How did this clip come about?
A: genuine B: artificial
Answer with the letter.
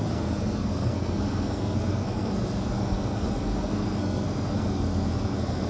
B